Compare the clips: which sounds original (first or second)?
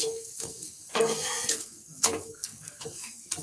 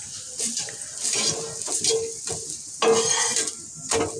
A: second